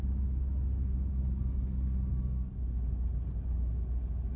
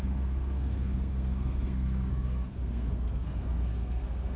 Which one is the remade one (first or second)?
second